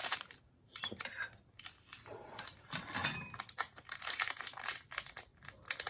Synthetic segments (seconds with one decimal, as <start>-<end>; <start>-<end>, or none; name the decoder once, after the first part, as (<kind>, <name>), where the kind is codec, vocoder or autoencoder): 0.0-1.1 (vocoder, BigVGAN v2); 3.0-4.7